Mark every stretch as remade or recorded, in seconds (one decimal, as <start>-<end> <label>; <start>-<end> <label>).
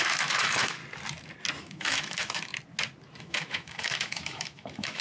0.0-0.8 remade; 0.8-1.6 recorded; 1.6-2.5 remade; 2.5-3.2 recorded; 3.2-5.0 remade